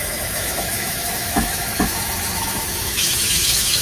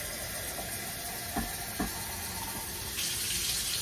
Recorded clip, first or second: second